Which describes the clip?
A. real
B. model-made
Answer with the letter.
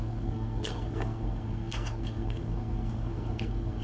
B